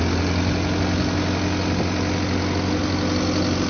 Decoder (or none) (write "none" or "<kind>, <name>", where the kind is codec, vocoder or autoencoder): none